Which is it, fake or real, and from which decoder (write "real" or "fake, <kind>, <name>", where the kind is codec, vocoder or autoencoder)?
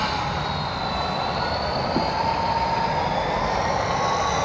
real